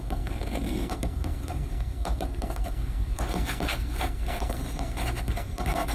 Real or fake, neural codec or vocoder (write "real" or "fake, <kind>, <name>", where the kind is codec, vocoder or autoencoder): fake, codec, SNAC